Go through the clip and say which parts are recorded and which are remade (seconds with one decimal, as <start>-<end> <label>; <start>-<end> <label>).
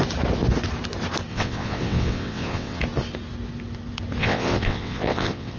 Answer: 0.0-1.3 recorded; 1.3-2.8 remade; 2.8-4.2 recorded; 4.2-5.6 remade